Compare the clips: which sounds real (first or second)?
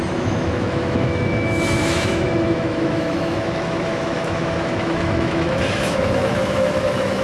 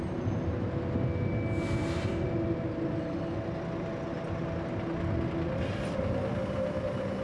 second